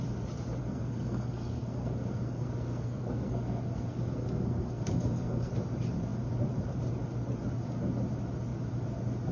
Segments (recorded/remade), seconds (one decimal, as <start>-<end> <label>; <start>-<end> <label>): 0.0-0.6 recorded; 0.6-5.5 remade; 5.5-9.3 recorded